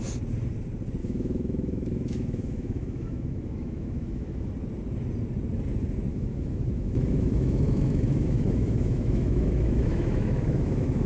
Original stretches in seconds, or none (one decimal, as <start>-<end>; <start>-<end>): 0.0-1.0; 4.5-6.1